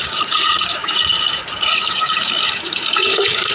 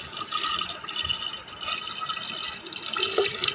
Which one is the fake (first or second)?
first